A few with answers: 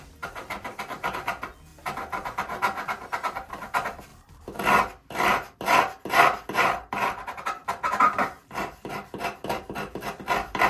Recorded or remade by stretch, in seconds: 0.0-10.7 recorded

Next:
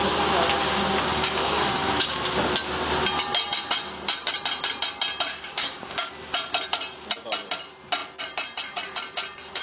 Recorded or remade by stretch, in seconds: 0.0-1.1 recorded; 1.1-2.2 remade; 2.2-5.3 recorded; 5.3-6.1 remade; 6.1-9.6 recorded

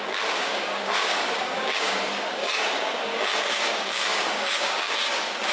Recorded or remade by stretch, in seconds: 0.0-5.5 remade

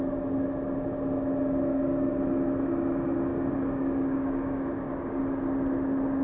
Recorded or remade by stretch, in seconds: 0.0-1.7 recorded; 1.7-2.2 remade; 2.2-3.3 recorded; 3.3-5.2 remade; 5.2-6.2 recorded

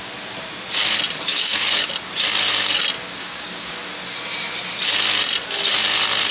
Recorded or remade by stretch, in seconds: 0.0-1.3 recorded; 1.3-1.9 remade; 1.9-3.2 recorded; 3.2-3.7 remade; 3.7-6.3 recorded

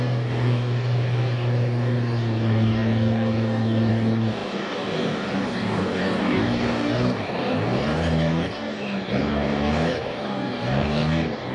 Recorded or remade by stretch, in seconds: 0.0-11.5 remade

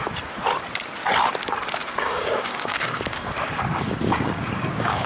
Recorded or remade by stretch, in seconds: 0.0-1.9 recorded; 1.9-5.1 remade

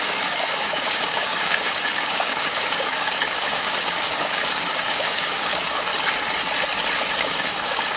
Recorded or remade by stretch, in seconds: 0.0-5.9 remade; 5.9-7.2 recorded; 7.2-8.0 remade